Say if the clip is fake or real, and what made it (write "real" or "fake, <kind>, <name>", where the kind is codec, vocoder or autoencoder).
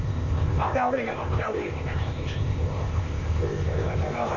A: fake, codec, ZipCodec